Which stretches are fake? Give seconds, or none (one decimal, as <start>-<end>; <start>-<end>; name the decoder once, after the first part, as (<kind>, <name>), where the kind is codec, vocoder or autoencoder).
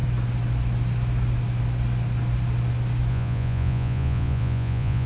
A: 3.1-5.1 (vocoder, Vocos)